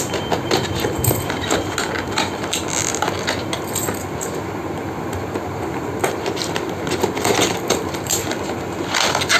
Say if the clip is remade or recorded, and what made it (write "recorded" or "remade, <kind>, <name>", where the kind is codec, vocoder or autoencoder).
recorded